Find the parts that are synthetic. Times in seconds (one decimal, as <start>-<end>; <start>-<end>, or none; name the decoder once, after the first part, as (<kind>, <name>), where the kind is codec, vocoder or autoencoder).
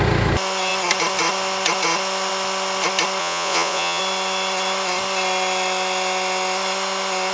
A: 3.2-4.0 (vocoder, Vocos)